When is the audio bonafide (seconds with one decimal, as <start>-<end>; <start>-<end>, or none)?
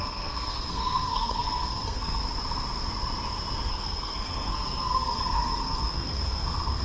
2.2-3.7